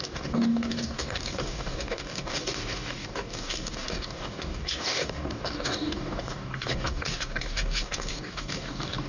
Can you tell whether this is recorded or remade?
remade